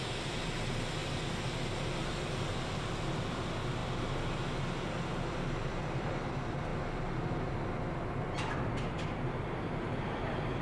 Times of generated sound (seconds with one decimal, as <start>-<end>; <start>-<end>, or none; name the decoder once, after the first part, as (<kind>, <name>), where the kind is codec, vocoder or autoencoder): 0.0-1.0 (vocoder, BigVGAN v2); 2.1-3.8; 5.2-10.6